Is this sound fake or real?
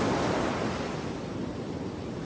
real